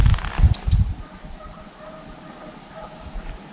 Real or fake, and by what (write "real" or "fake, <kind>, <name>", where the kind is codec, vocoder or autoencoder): real